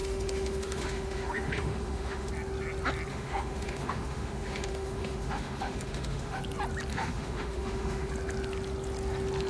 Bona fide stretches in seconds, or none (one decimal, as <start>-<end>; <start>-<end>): 2.3-3.1; 6.4-6.9; 8.1-9.5